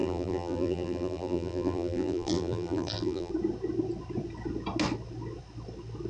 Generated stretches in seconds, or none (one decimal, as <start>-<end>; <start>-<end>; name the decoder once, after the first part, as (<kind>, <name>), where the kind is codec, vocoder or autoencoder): 0.0-3.3 (vocoder, BigVGAN v2)